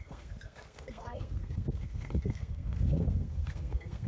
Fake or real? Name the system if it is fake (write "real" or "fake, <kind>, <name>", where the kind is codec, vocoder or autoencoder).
fake, codec, SNAC